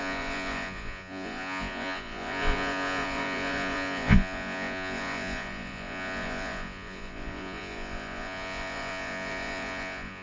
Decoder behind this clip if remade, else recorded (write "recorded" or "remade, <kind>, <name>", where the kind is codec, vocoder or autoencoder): remade, vocoder, Vocos